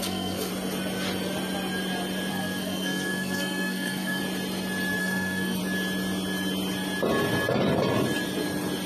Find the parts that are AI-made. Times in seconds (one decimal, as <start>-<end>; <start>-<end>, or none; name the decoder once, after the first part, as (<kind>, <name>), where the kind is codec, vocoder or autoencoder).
0.0-0.5 (codec, SNAC); 2.3-4.2; 5.0-5.6